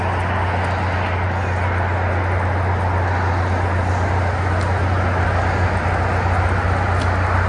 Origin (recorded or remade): recorded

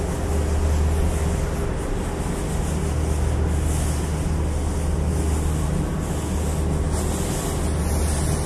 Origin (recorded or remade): recorded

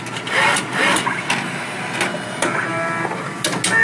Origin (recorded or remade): recorded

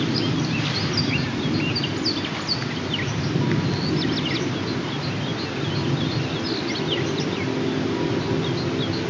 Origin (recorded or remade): recorded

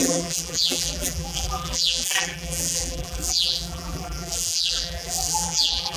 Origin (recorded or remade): remade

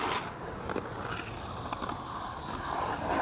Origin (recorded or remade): recorded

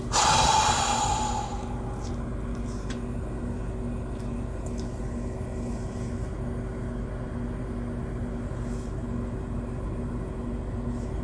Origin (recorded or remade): recorded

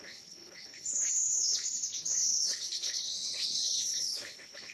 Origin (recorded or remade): remade